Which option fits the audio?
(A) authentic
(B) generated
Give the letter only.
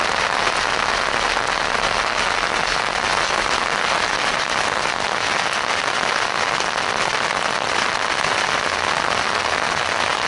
A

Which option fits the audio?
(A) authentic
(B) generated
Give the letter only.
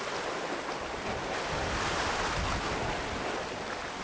A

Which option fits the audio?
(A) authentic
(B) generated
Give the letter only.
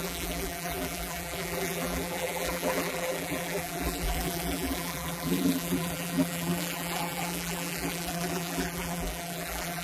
B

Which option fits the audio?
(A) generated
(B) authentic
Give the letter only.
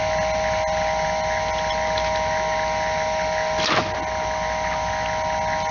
B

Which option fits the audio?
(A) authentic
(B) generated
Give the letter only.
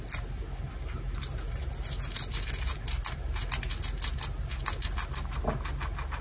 A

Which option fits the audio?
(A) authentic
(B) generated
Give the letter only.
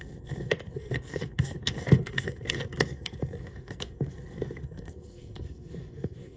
B